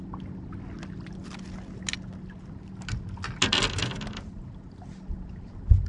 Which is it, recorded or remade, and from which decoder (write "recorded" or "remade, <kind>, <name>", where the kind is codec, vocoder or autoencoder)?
recorded